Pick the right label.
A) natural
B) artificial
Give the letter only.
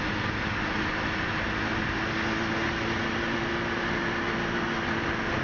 A